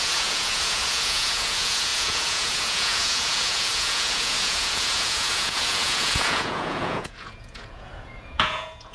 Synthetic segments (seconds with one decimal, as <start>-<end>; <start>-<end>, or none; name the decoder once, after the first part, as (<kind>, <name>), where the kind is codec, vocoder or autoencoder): 0.0-8.9 (vocoder, Vocos)